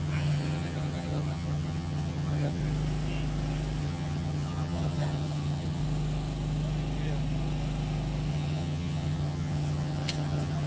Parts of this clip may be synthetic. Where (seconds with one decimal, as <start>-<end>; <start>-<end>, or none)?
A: 0.0-2.6; 3.8-5.8; 8.3-10.7